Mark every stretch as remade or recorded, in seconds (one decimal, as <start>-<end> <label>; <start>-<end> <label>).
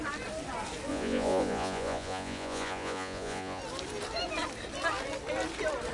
0.0-0.9 recorded; 0.9-3.6 remade; 3.6-5.9 recorded